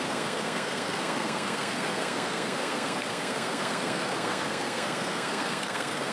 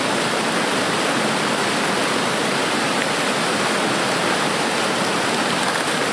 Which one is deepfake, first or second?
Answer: first